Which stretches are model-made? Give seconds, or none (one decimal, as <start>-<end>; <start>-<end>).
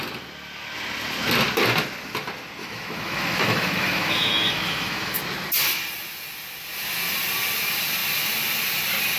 2.6-5.2